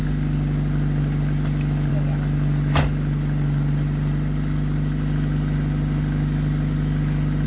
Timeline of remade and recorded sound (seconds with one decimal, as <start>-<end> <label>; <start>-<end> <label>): 0.0-7.5 recorded